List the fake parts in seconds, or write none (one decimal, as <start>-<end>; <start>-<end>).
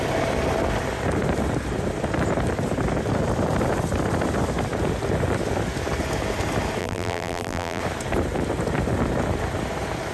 6.8-7.8